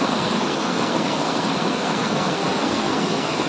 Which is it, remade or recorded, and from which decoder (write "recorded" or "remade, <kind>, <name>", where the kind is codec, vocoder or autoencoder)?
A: remade, codec, SNAC